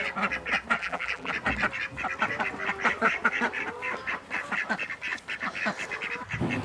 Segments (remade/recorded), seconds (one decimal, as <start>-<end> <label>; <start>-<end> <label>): 0.0-0.8 recorded; 0.8-1.3 remade; 1.3-6.6 recorded